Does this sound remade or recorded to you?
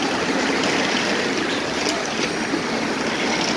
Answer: recorded